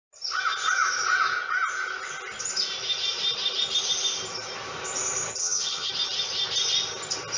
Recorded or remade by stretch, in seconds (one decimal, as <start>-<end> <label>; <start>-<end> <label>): 0.0-5.4 recorded; 5.4-5.9 remade; 5.9-7.4 recorded

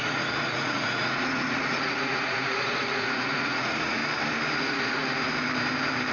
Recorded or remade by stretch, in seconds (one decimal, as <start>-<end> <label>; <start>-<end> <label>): 0.0-4.0 remade; 4.0-4.6 recorded; 4.6-5.0 remade; 5.0-6.1 recorded

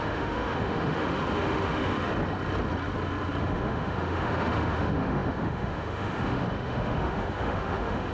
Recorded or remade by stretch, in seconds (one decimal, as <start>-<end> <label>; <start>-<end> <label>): 0.0-2.1 remade; 2.1-3.4 recorded; 3.4-8.1 remade

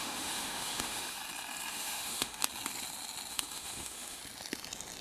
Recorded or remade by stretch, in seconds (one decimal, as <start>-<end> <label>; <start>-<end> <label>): 0.0-1.2 remade; 1.2-1.7 recorded; 1.7-2.4 remade; 2.4-3.3 recorded; 3.3-4.2 remade; 4.2-5.0 recorded

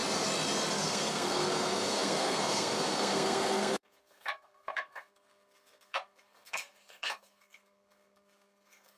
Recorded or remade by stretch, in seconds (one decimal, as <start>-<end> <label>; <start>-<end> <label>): 0.0-0.7 recorded; 0.7-9.0 remade

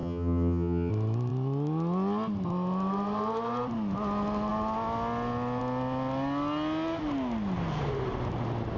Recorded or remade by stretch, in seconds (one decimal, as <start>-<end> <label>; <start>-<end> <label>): 0.0-0.9 remade; 0.9-8.8 recorded

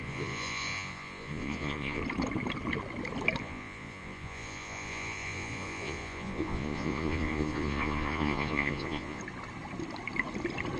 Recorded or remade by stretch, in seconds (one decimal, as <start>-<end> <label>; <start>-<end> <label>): 0.0-2.0 remade; 2.0-3.4 recorded; 3.4-9.2 remade; 9.2-10.8 recorded

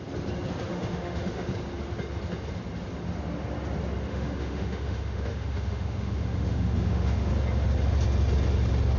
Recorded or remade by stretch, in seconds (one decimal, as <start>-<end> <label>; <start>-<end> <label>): 0.0-0.7 recorded; 0.7-1.5 remade; 1.5-4.1 recorded; 4.1-7.3 remade; 7.3-9.0 recorded